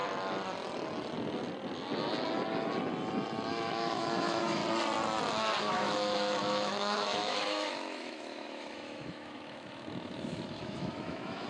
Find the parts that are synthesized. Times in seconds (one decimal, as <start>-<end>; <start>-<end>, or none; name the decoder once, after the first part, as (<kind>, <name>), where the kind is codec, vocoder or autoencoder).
3.5-4.6 (autoencoder, DAC-VAE); 5.6-11.5